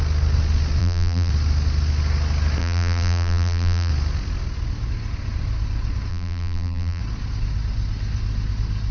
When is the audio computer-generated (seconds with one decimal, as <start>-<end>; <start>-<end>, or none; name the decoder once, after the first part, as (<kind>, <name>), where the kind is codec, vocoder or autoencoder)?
0.8-1.3 (vocoder, BigVGAN v2); 2.6-3.9; 6.1-7.0